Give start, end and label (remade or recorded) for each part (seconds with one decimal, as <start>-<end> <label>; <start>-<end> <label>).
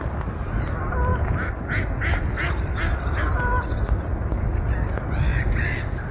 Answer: 0.0-6.1 recorded